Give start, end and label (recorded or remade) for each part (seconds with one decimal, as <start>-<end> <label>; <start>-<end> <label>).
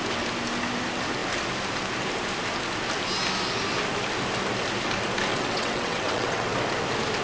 0.0-5.3 recorded; 5.3-6.5 remade; 6.5-7.2 recorded